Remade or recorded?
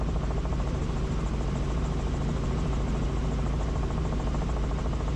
recorded